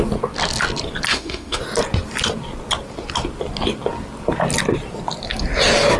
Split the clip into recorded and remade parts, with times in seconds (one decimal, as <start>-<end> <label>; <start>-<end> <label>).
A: 0.0-1.1 recorded; 1.1-1.6 remade; 1.6-6.0 recorded